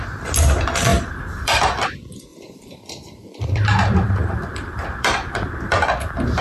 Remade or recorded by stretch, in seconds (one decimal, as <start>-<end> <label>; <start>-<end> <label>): 0.0-0.9 recorded; 0.9-1.6 remade; 1.6-2.3 recorded; 2.3-6.4 remade